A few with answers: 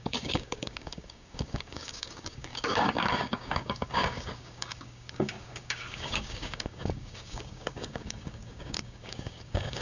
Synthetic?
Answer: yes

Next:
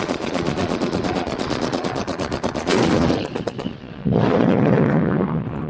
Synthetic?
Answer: yes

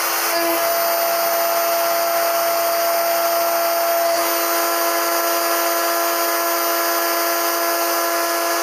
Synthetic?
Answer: no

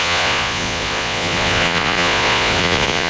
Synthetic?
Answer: yes